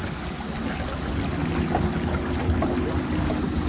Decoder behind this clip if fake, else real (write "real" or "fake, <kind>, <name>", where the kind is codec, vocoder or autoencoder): real